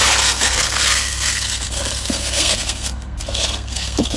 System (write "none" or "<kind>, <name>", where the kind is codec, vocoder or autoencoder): codec, SNAC